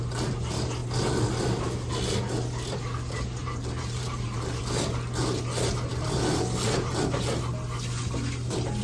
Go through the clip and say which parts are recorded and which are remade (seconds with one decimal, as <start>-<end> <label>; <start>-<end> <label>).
0.0-3.4 recorded; 3.4-4.6 remade; 4.6-8.8 recorded